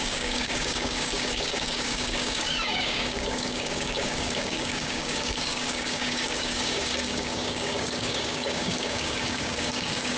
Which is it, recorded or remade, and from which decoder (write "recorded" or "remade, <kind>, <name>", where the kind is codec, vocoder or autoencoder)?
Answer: remade, codec, DAC